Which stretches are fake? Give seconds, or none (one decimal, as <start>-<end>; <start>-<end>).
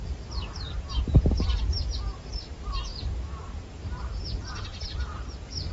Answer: 0.0-5.7